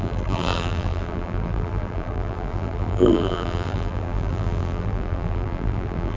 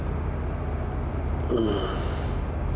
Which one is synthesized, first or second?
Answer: first